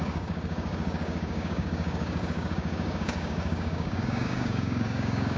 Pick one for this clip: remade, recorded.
remade